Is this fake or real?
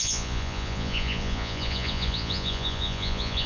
fake